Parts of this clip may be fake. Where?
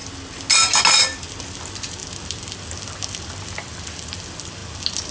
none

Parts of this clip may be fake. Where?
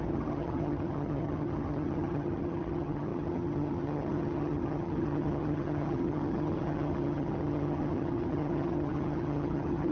0.0-9.9 (vocoder, HiFi-GAN)